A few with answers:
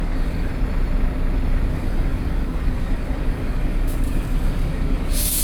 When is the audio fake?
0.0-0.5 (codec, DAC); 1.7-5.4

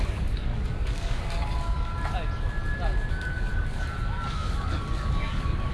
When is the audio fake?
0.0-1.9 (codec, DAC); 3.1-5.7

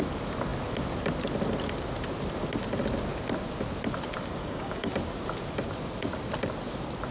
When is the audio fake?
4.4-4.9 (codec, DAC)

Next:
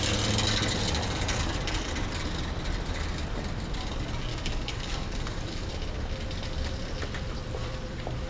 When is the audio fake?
4.3-5.7 (codec, DAC)

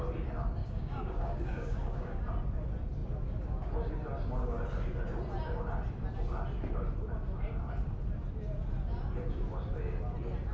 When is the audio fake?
0.6-2.2 (codec, DAC)

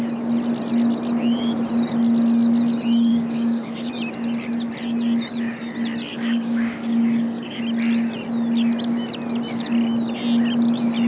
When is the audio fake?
3.1-3.9 (codec, DAC); 6.1-7.6